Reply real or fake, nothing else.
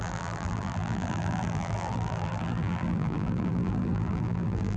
fake